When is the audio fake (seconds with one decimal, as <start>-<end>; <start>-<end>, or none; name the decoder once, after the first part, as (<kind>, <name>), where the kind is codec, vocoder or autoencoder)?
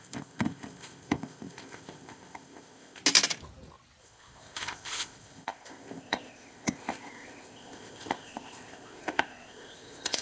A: 0.0-3.0 (codec, ZipCodec); 4.0-10.2